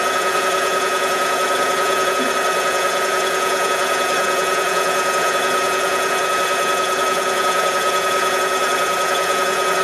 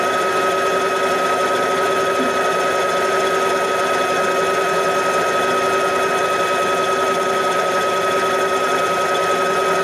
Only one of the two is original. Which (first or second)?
second